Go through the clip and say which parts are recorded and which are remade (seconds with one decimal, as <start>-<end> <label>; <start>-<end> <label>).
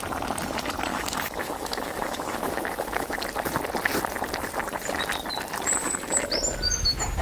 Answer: 0.0-0.9 recorded; 0.9-3.2 remade; 3.2-7.2 recorded